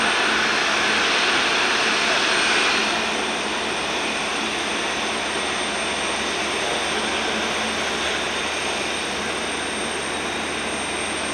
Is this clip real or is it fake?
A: real